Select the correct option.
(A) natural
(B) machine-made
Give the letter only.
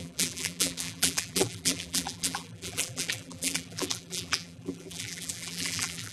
B